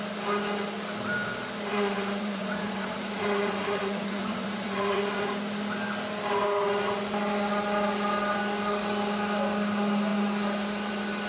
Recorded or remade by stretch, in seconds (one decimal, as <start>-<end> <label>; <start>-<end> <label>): 0.0-1.7 recorded; 1.7-5.2 remade; 5.2-11.3 recorded